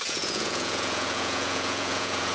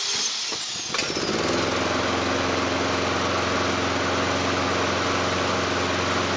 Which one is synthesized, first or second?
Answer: first